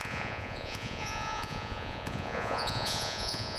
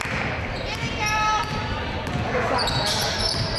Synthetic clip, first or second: first